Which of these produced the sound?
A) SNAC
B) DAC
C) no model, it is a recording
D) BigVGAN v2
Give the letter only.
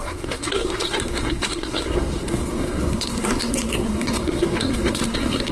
A